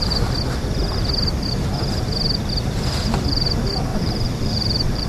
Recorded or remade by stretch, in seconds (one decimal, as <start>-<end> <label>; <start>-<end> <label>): 0.0-3.9 recorded; 3.9-5.1 remade